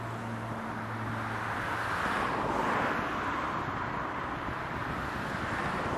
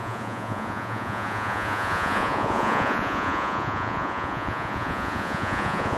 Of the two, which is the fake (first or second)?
second